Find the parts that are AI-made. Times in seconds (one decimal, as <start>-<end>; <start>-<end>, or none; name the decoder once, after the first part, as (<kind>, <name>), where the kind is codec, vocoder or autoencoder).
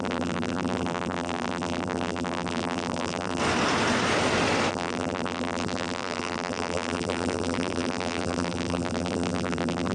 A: 0.0-3.4 (vocoder, BigVGAN v2); 4.7-9.9